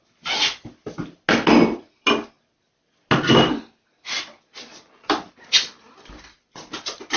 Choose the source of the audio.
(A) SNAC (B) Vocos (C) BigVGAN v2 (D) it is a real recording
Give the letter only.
D